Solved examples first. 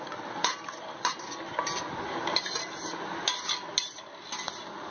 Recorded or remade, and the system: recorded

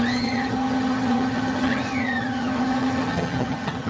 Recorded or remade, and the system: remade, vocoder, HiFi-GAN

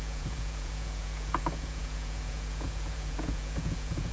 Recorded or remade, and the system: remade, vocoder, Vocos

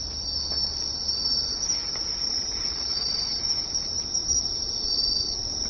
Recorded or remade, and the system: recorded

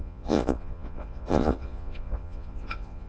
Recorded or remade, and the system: remade, vocoder, Vocos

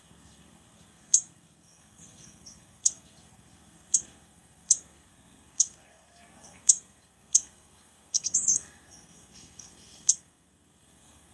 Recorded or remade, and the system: remade, codec, SNAC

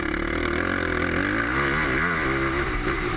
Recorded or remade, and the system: recorded